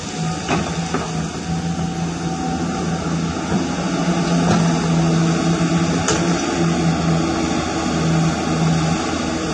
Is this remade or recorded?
recorded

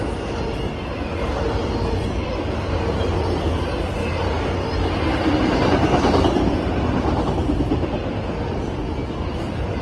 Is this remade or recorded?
recorded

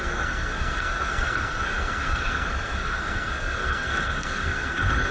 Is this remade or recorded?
remade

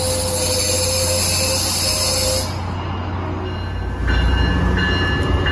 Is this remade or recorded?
recorded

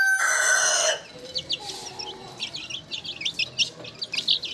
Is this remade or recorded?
recorded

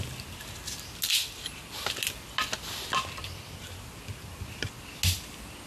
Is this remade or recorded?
recorded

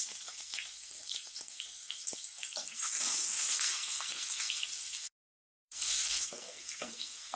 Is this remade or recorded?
remade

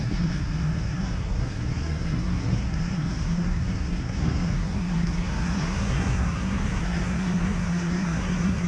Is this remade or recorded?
remade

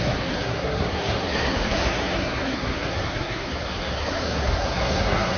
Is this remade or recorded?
remade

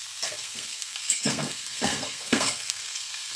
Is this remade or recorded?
remade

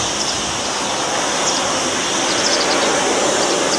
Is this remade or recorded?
recorded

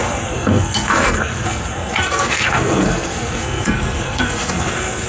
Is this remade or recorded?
remade